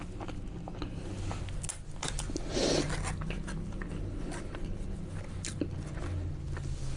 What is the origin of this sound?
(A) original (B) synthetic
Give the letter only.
A